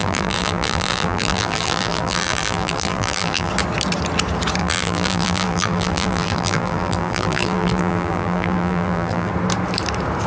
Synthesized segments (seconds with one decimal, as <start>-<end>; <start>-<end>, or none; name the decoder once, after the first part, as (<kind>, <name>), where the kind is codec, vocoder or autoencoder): 0.0-3.5 (vocoder, BigVGAN v2); 4.6-9.3